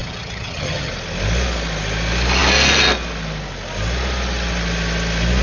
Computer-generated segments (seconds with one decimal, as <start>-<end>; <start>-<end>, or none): 0.0-0.9